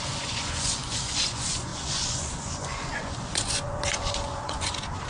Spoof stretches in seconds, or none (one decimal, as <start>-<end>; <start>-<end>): 0.0-5.1

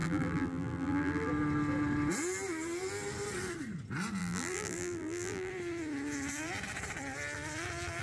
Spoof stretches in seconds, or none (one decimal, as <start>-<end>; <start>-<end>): 0.0-1.3; 4.2-5.5

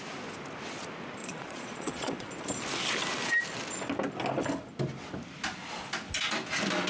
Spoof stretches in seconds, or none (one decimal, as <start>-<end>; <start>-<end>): 1.2-2.3